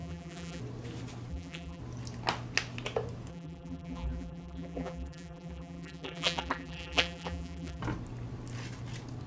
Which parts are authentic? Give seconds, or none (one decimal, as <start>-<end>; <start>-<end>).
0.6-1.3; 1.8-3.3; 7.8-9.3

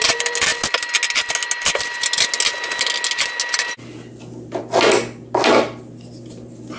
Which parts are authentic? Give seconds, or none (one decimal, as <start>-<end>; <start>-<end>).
0.0-6.8

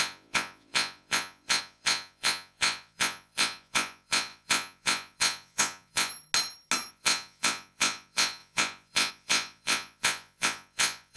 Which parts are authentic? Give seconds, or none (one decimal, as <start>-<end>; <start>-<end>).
6.1-6.9

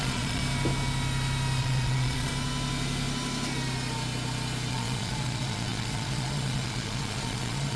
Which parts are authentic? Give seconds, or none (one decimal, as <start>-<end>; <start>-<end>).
0.4-1.6; 2.3-4.7